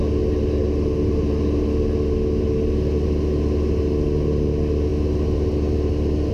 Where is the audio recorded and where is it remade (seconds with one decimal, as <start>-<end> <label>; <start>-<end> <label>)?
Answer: 0.0-6.3 recorded